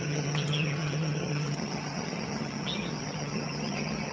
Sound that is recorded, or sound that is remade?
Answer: remade